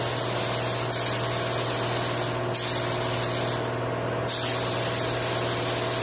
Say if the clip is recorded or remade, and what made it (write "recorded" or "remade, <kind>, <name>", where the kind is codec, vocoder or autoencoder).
recorded